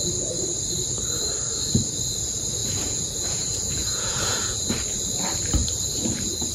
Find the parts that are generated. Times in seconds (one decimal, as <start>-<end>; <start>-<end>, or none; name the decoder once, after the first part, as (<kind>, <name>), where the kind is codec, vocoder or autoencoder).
2.6-4.7 (vocoder, Vocos)